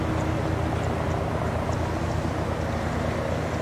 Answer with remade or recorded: recorded